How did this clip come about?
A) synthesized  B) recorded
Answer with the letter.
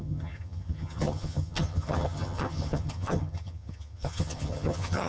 A